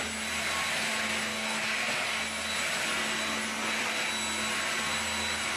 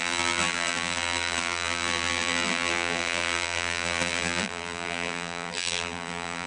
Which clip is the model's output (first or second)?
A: second